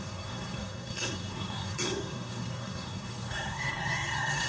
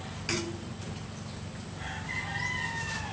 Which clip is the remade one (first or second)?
first